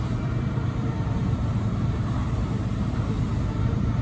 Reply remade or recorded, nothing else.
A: remade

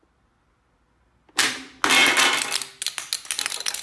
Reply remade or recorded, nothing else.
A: recorded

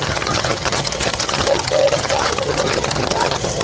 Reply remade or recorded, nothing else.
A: remade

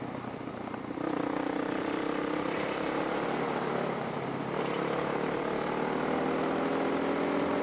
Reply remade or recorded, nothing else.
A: recorded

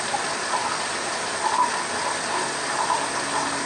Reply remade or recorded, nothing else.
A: recorded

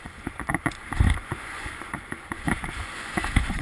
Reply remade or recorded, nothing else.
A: remade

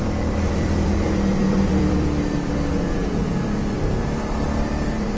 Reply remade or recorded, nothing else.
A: remade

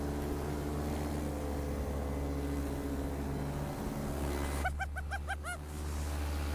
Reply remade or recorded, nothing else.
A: recorded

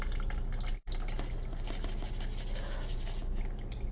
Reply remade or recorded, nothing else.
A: recorded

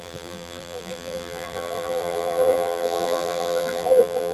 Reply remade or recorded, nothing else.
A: remade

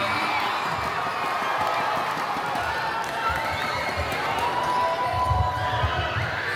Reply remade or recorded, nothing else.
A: recorded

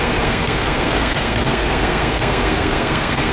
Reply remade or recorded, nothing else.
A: remade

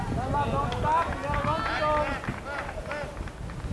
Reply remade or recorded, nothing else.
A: recorded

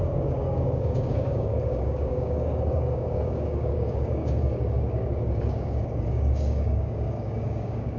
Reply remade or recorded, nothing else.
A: remade